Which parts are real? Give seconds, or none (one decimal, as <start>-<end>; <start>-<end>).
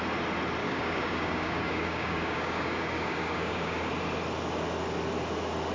0.0-0.6; 3.9-5.7